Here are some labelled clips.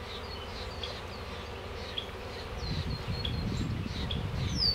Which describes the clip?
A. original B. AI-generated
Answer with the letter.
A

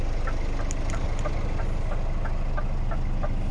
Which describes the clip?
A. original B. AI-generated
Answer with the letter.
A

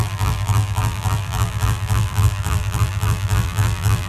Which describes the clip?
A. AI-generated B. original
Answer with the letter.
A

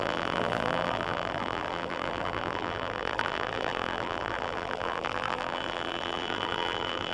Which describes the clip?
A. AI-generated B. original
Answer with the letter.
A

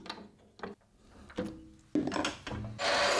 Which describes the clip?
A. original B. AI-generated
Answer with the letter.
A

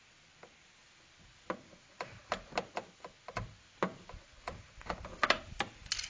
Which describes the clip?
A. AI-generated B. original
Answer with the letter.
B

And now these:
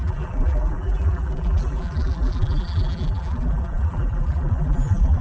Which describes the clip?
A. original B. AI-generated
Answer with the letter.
B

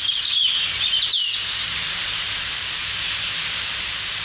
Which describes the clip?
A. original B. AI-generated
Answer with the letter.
B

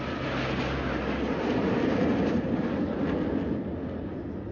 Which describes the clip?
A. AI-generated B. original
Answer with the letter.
B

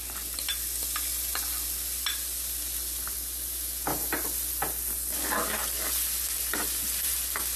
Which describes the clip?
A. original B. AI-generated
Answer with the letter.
A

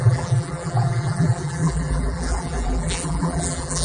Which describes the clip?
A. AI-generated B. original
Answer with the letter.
A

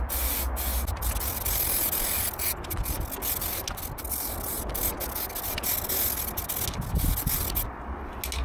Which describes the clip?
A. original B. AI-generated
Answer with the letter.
A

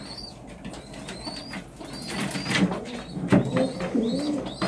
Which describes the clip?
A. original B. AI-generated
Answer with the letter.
A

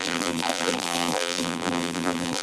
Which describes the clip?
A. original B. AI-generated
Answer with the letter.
B